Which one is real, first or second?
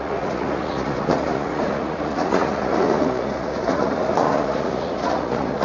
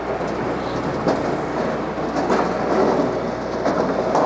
second